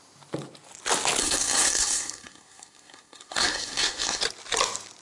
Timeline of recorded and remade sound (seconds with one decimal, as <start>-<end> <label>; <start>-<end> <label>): 0.0-1.2 recorded; 1.2-4.2 remade; 4.2-5.0 recorded